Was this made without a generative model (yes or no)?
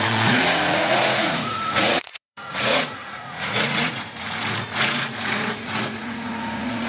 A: no